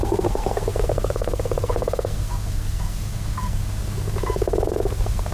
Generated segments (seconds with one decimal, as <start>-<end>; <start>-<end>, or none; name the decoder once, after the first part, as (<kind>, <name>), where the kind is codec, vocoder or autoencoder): 0.0-5.3 (codec, SNAC)